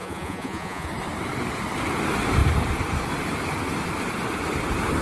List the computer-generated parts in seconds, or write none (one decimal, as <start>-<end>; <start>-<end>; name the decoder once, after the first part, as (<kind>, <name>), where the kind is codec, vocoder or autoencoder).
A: 0.0-0.9 (vocoder, Vocos)